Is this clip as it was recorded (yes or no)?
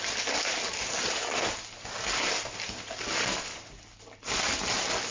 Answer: yes